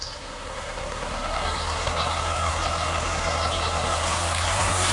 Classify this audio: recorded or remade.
remade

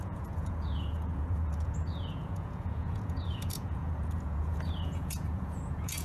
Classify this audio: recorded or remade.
remade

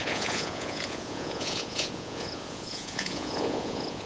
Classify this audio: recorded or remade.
remade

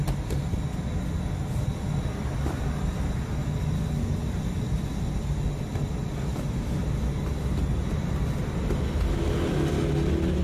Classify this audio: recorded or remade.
recorded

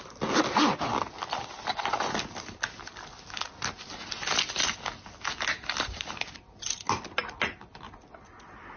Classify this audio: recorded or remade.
recorded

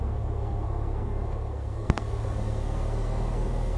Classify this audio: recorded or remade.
remade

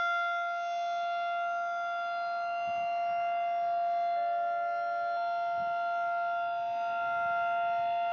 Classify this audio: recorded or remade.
recorded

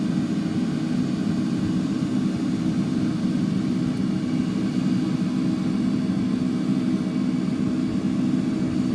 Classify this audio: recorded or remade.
recorded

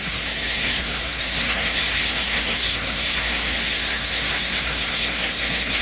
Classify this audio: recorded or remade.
remade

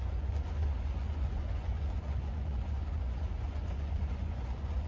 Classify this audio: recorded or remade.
remade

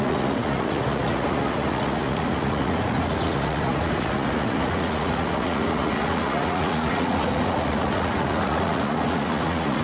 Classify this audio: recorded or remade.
remade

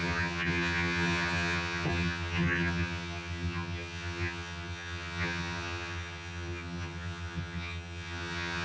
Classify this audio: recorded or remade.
remade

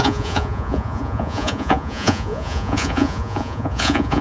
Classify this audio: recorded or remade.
remade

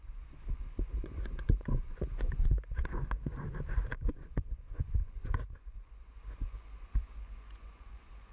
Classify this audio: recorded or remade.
remade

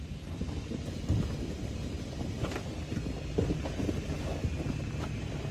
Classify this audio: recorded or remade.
recorded